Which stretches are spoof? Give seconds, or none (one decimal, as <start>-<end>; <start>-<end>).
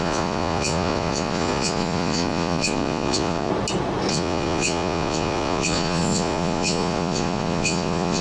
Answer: 0.0-3.5; 4.1-8.2